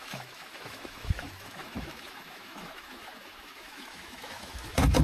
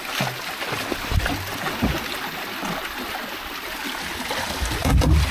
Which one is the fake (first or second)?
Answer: first